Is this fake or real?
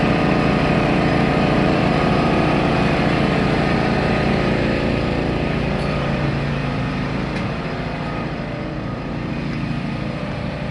fake